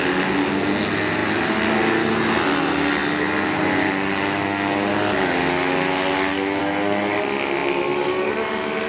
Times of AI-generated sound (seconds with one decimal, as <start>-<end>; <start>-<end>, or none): none